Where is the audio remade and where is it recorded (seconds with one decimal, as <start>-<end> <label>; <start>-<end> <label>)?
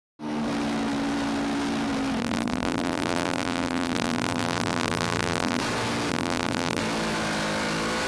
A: 0.0-2.2 recorded; 2.2-5.6 remade; 5.6-6.1 recorded; 6.1-6.8 remade; 6.8-8.1 recorded